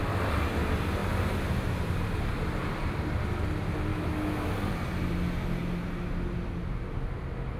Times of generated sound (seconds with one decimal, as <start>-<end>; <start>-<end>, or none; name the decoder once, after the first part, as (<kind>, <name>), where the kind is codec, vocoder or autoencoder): 3.9-4.5 (autoencoder, DAC-VAE)